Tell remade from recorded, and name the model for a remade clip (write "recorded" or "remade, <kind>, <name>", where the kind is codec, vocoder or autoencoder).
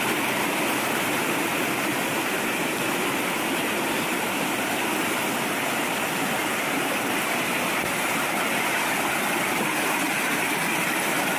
recorded